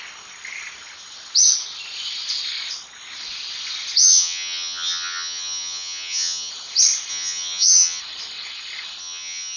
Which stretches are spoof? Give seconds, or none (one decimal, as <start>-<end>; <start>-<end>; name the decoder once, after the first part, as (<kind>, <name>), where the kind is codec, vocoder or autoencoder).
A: 4.0-6.5 (vocoder, HiFi-GAN); 7.1-8.0; 9.0-9.6